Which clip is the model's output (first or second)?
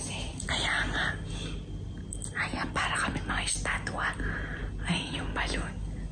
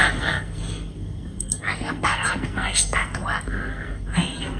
second